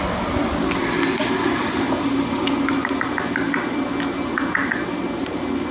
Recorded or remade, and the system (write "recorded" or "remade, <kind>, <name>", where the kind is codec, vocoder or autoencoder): recorded